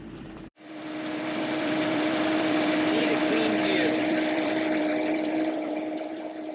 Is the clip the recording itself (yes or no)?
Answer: no